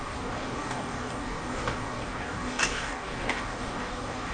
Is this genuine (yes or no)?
no